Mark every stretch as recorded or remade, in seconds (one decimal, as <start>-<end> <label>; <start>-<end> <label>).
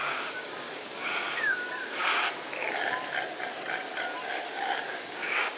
0.0-2.0 remade; 2.0-4.3 recorded; 4.3-5.6 remade